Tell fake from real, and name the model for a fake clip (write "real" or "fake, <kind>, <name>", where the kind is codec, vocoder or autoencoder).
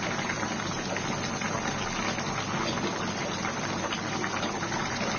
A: fake, vocoder, BigVGAN v2